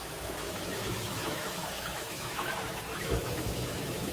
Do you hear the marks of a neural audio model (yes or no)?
yes